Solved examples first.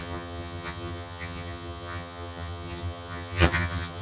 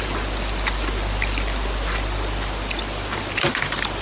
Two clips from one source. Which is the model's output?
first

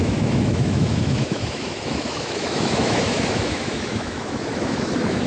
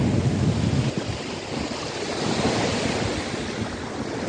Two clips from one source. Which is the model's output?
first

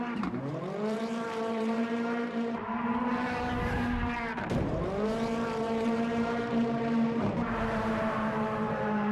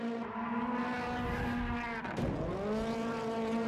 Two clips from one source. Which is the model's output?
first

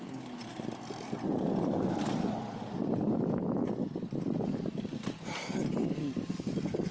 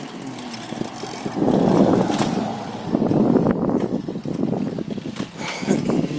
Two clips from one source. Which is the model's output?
first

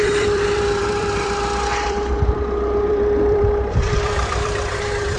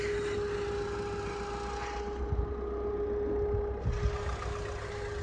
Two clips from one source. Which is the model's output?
first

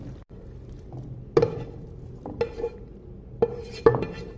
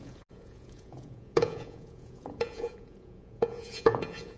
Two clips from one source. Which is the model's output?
second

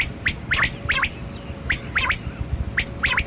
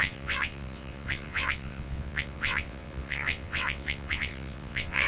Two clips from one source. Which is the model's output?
second